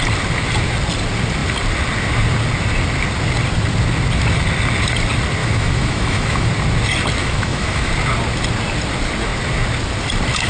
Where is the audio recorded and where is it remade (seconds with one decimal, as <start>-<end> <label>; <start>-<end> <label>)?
0.0-5.4 recorded; 5.4-6.5 remade; 6.5-7.2 recorded; 7.2-7.9 remade; 7.9-10.5 recorded